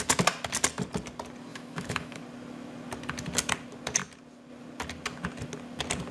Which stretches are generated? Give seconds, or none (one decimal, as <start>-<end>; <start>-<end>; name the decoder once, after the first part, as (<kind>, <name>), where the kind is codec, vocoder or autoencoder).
1.5-2.2 (autoencoder, DAC-VAE)